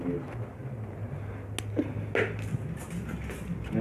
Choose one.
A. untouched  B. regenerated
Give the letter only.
A